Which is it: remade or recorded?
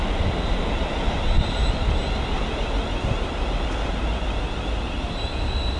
recorded